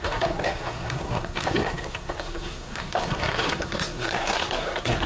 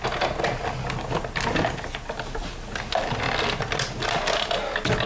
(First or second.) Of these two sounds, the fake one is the first